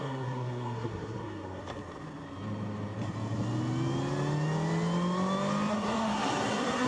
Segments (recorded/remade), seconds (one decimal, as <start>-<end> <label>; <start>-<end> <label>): 0.0-1.6 remade; 1.6-5.7 recorded; 5.7-6.9 remade